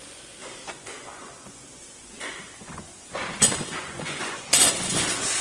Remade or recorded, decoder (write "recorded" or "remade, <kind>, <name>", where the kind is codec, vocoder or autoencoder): remade, vocoder, Vocos